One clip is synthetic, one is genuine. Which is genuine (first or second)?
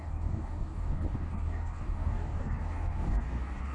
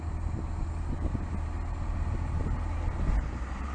second